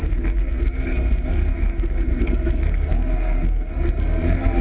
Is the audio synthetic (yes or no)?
yes